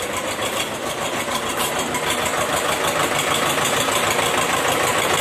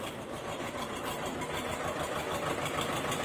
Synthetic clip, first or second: second